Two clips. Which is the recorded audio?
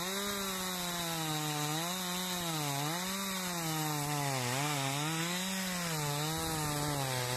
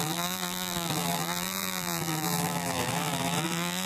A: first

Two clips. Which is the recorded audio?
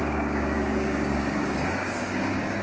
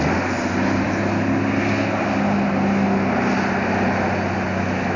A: second